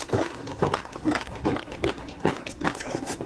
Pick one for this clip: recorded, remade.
remade